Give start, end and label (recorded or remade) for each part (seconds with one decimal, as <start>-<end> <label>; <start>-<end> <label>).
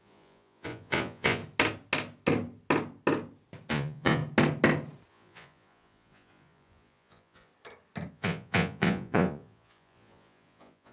0.0-1.4 remade; 1.4-3.7 recorded; 3.7-4.2 remade; 4.2-5.1 recorded; 5.1-7.5 remade; 7.5-8.1 recorded; 8.1-10.9 remade